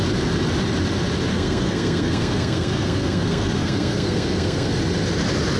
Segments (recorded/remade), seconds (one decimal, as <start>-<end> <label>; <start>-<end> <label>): 0.0-1.3 recorded; 1.3-4.7 remade; 4.7-5.6 recorded